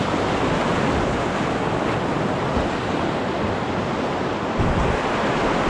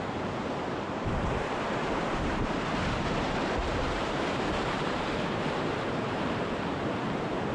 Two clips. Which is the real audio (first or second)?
first